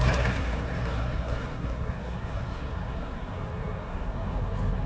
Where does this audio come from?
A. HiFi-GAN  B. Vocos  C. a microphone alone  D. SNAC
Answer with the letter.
D